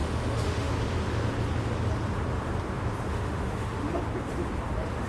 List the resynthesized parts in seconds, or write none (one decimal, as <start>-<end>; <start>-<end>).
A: 0.0-0.7; 3.1-4.0